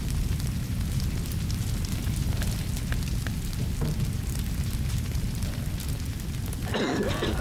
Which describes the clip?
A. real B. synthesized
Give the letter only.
A